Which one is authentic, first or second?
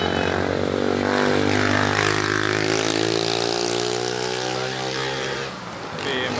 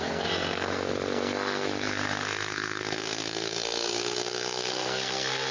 first